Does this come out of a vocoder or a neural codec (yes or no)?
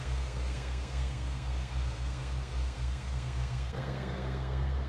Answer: yes